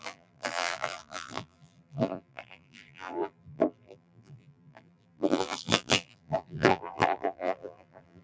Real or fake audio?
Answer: fake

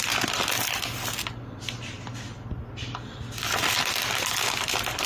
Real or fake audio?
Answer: real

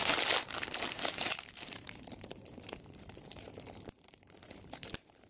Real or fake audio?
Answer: fake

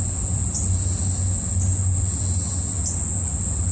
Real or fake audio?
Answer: real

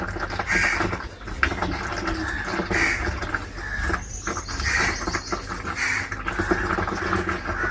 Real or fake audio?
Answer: real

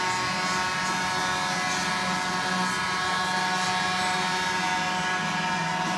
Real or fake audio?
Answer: real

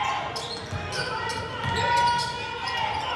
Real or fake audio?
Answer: real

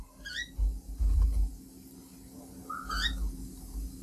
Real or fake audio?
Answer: real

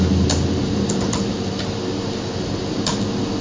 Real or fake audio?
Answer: real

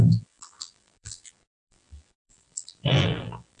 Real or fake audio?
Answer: fake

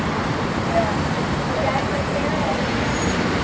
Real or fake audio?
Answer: fake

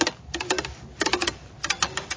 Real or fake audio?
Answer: real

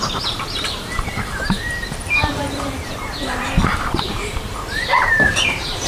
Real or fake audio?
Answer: fake